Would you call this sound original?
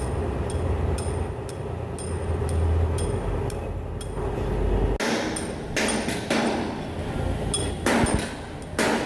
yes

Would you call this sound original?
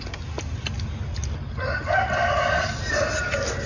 yes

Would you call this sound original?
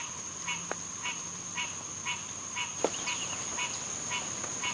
yes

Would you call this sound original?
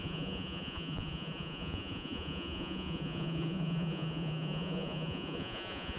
no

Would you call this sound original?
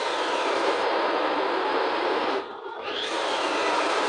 yes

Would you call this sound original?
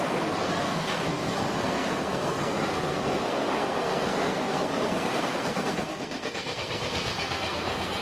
no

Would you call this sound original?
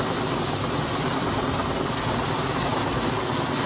yes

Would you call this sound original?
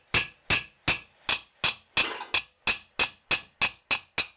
yes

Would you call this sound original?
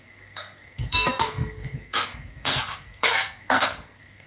no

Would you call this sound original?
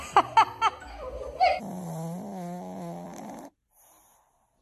yes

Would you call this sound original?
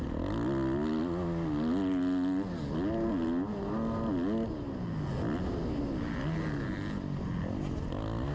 yes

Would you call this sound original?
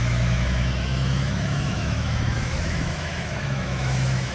no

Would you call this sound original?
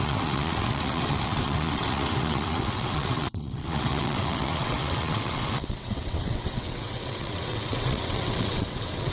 no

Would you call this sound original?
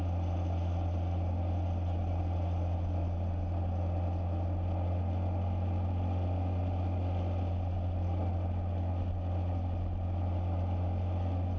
yes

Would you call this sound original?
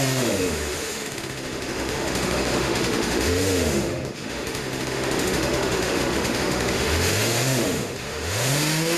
no